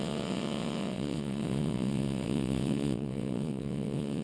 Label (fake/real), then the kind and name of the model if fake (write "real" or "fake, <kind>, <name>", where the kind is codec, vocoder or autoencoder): fake, vocoder, WaveNeXt